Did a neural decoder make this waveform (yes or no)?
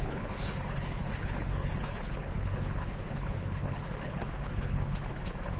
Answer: yes